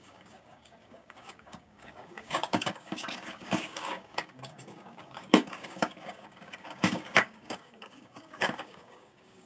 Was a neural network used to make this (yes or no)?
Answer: yes